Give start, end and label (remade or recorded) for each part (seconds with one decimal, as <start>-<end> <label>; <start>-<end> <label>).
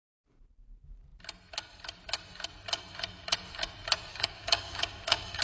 0.0-4.1 recorded; 4.1-5.4 remade